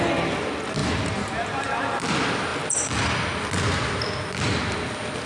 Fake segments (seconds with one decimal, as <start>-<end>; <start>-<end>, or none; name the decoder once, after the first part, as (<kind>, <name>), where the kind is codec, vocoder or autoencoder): 0.8-2.0 (vocoder, BigVGAN v2)